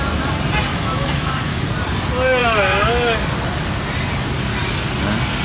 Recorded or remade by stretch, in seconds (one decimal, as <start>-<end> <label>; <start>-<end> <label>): 0.0-0.7 recorded; 0.7-1.7 remade; 1.7-5.4 recorded